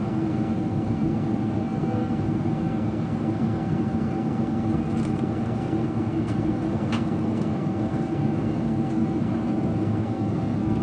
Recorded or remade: remade